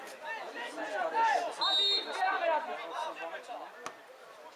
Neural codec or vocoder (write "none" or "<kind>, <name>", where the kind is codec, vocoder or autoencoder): none